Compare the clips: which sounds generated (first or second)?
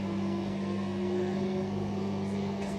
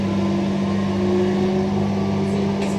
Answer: first